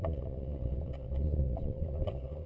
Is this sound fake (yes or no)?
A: yes